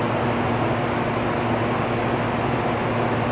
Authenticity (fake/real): real